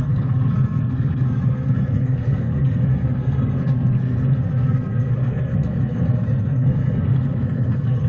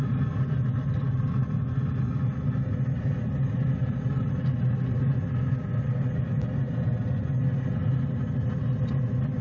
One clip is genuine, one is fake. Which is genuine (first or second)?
second